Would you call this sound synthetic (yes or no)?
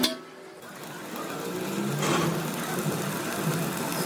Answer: no